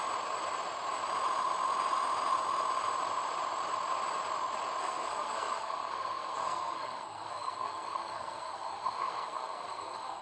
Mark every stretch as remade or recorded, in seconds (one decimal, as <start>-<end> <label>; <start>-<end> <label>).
0.0-4.8 recorded; 4.8-10.2 remade